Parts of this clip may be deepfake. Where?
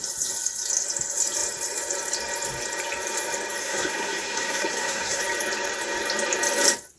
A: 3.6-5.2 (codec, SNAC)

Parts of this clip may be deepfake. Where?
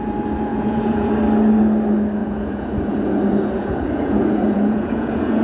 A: 0.5-1.1 (vocoder, Vocos); 2.2-5.4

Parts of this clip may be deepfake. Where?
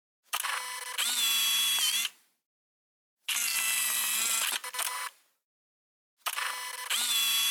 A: 2.0-2.7 (vocoder, BigVGAN v2)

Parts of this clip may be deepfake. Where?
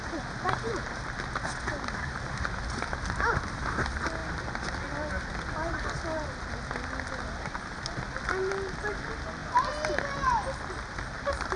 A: none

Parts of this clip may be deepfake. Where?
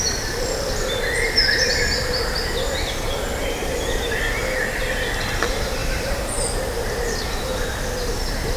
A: 3.6-4.2 (vocoder, BigVGAN v2); 5.8-6.3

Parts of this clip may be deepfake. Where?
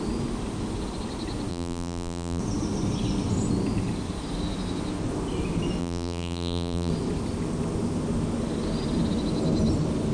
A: 1.5-2.4 (vocoder, BigVGAN v2); 5.8-6.9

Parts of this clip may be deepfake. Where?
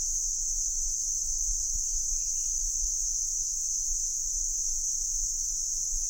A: 1.5-2.5 (vocoder, BigVGAN v2); 4.0-4.6